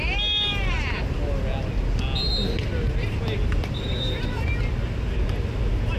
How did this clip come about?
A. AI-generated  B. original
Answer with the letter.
B